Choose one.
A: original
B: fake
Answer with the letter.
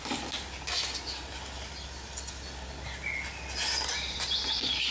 A